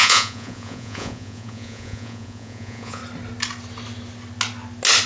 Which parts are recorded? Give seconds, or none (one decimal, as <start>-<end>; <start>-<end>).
3.0-5.1